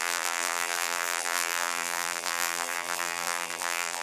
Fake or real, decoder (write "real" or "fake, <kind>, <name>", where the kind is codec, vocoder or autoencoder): fake, vocoder, BigVGAN v2